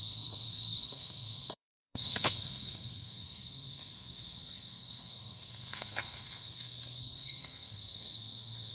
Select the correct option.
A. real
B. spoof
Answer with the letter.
B